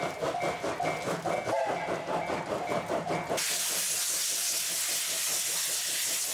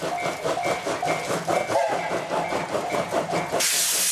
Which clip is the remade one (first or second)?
second